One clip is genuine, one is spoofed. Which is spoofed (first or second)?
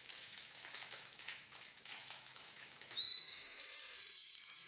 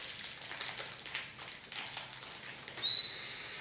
first